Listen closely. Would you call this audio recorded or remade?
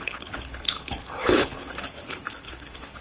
remade